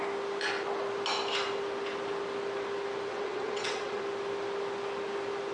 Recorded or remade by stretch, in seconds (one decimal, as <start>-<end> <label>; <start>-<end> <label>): 0.0-3.1 recorded; 3.1-4.0 remade; 4.0-5.5 recorded